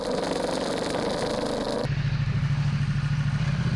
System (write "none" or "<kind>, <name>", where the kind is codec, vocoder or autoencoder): none